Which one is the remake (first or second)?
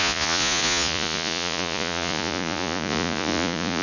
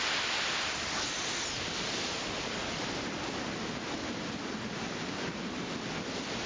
first